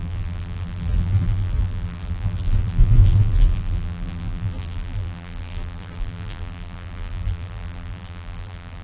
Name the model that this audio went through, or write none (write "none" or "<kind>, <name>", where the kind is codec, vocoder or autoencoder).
vocoder, BigVGAN v2